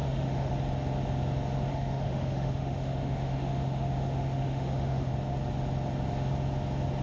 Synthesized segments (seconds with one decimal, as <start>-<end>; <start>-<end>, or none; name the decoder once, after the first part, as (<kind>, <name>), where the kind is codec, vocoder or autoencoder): 0.0-0.5 (autoencoder, DAC-VAE); 1.7-5.1